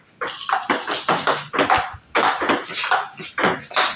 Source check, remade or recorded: recorded